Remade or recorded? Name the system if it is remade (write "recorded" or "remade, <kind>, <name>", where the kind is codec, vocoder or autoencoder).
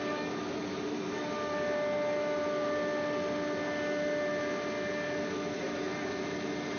recorded